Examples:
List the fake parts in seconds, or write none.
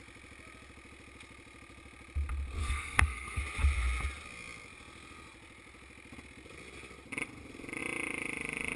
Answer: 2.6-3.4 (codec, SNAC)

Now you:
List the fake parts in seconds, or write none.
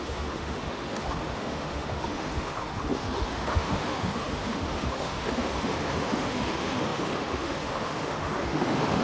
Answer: 0.0-9.0 (autoencoder, DAC-VAE)